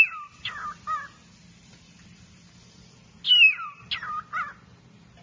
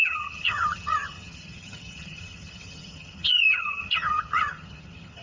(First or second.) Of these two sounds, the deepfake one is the second